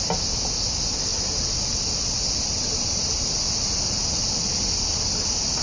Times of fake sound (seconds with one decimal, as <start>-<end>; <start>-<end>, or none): 1.1-4.5